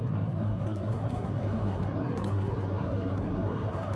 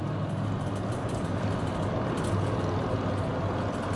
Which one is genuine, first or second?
second